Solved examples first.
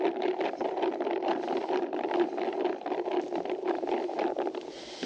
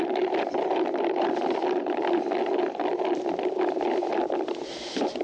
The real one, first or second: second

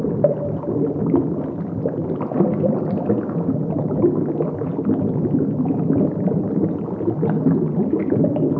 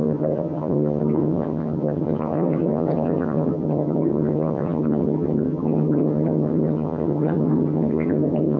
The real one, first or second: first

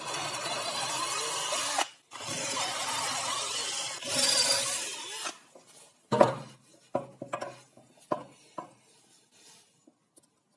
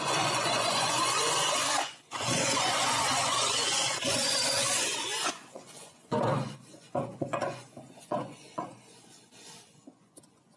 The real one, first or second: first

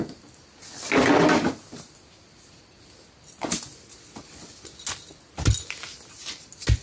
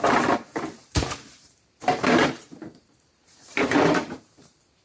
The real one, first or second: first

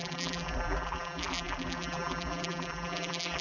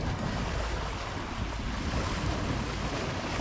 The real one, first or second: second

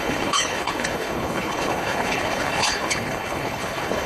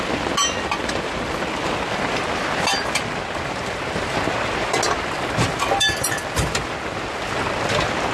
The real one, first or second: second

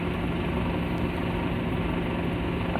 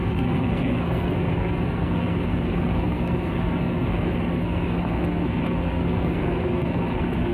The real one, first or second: first